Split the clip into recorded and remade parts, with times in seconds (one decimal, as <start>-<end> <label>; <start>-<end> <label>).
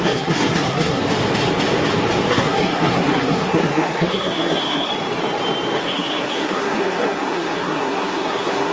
0.0-1.0 remade; 1.0-2.3 recorded; 2.3-4.9 remade; 4.9-5.8 recorded; 5.8-8.7 remade